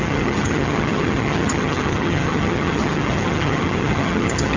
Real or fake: fake